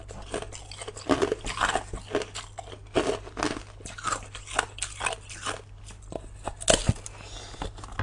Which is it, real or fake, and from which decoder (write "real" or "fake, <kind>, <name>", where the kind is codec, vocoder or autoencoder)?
real